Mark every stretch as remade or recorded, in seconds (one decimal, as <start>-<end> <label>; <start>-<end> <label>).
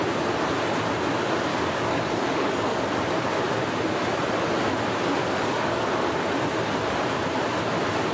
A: 0.0-1.5 recorded; 1.5-2.8 remade; 2.8-5.2 recorded; 5.2-5.9 remade; 5.9-8.1 recorded